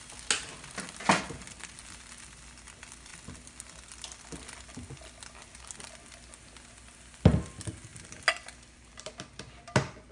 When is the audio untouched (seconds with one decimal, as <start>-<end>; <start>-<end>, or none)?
0.0-10.1